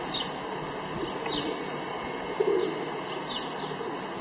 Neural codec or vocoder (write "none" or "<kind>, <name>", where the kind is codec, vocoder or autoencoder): none